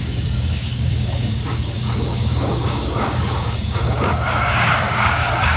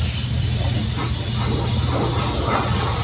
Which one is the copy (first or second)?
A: first